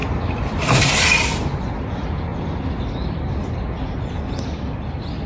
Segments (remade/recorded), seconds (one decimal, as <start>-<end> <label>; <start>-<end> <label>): 0.0-5.3 recorded